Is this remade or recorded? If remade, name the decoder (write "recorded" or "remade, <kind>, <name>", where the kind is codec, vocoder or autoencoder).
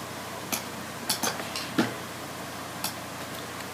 recorded